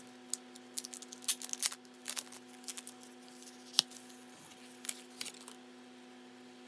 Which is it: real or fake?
real